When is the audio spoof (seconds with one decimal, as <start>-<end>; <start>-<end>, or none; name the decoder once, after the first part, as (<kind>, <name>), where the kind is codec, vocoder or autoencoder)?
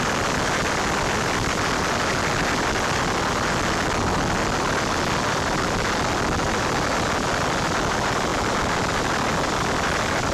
none